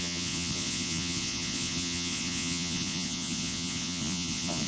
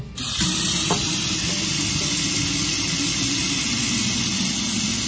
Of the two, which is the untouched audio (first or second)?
second